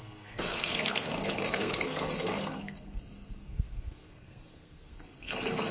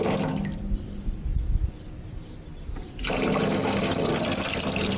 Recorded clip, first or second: second